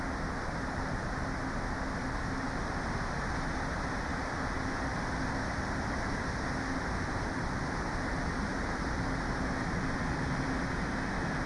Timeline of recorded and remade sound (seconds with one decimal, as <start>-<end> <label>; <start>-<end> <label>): 0.0-11.5 recorded